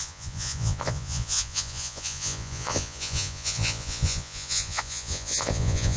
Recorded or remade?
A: remade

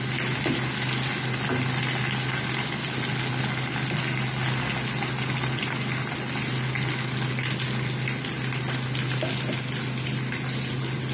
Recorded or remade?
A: recorded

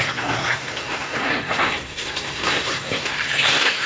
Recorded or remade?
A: remade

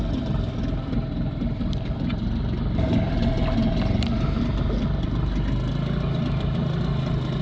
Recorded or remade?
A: recorded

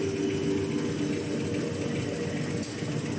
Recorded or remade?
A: recorded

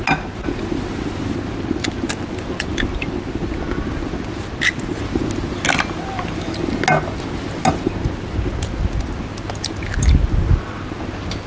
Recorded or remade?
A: recorded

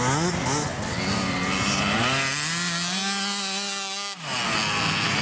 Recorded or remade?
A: recorded